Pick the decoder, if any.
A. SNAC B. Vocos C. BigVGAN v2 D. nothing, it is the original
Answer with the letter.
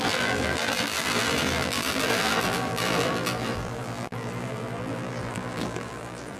C